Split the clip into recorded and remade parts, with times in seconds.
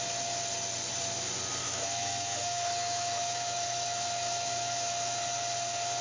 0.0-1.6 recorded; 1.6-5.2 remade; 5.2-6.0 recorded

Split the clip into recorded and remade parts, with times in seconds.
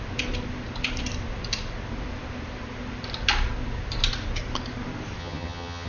0.0-5.2 recorded; 5.2-5.9 remade